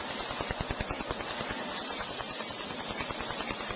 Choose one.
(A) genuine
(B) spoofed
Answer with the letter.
A